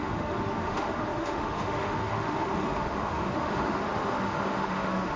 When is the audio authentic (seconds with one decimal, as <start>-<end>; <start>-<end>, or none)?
none